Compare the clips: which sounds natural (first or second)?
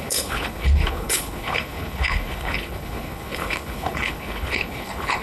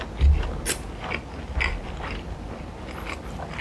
second